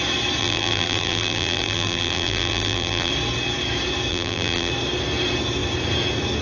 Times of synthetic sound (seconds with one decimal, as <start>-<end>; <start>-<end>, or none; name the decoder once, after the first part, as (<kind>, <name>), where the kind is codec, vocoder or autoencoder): 0.4-3.1 (vocoder, BigVGAN v2); 4.1-4.7